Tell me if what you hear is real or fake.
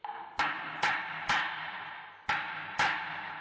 real